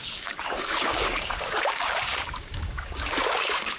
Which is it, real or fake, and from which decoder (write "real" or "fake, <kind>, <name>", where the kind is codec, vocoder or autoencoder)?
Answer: fake, codec, DAC